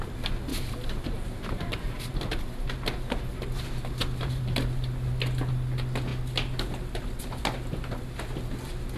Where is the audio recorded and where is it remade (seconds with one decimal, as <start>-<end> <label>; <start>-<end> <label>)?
0.0-0.5 recorded; 0.5-2.7 remade; 2.7-4.0 recorded; 4.0-4.6 remade; 4.6-9.0 recorded

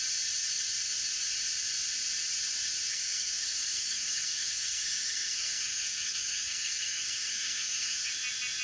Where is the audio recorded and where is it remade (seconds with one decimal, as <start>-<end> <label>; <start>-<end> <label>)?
0.0-2.9 recorded; 2.9-8.1 remade; 8.1-8.6 recorded

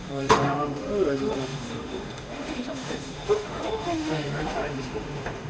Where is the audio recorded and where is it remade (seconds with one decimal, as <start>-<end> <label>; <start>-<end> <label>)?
0.0-5.5 remade

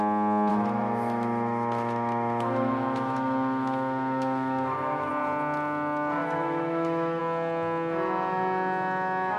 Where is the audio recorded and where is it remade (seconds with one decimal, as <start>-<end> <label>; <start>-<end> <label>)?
0.0-0.5 recorded; 0.5-5.1 remade; 5.1-6.2 recorded; 6.2-7.2 remade; 7.2-9.4 recorded